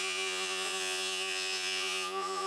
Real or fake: fake